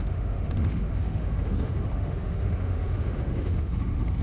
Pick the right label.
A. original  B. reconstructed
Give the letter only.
B